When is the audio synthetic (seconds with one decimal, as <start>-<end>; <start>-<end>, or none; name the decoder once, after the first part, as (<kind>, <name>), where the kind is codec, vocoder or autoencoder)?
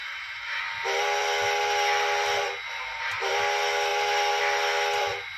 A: 0.0-0.6 (autoencoder, DAC-VAE)